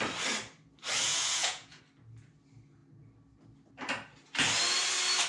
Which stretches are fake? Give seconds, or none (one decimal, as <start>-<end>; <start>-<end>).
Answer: 1.1-1.8